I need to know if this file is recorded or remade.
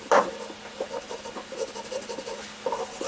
recorded